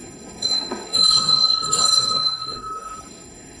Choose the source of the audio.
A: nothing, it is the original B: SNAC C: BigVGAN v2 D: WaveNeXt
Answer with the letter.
B